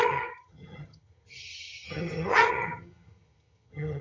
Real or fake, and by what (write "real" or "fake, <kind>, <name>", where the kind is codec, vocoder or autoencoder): fake, vocoder, HiFi-GAN